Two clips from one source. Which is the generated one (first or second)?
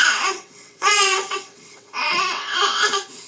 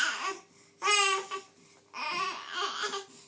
first